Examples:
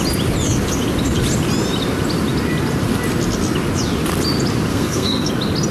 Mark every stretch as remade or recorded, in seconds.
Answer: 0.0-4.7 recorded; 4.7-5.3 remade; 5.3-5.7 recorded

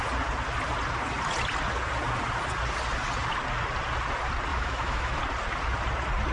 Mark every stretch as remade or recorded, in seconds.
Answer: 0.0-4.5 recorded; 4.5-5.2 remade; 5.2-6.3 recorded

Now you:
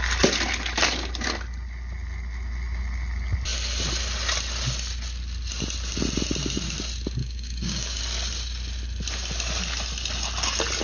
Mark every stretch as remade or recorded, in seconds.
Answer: 0.0-7.2 recorded; 7.2-8.0 remade; 8.0-10.8 recorded

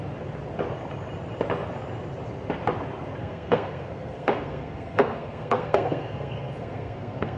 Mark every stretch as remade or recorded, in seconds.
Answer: 0.0-3.2 recorded; 3.2-7.4 remade

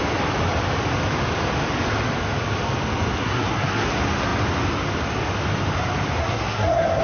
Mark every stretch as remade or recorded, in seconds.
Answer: 0.0-3.2 recorded; 3.2-3.9 remade; 3.9-6.2 recorded; 6.2-7.0 remade

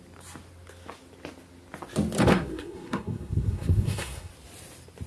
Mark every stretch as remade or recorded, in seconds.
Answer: 0.0-2.3 recorded; 2.3-4.3 remade; 4.3-5.1 recorded